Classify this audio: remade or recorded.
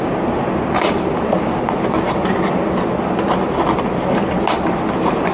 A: recorded